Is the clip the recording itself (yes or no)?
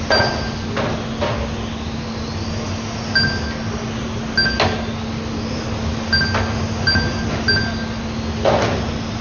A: yes